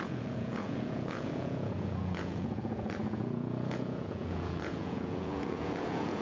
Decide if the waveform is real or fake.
fake